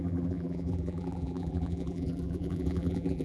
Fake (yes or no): yes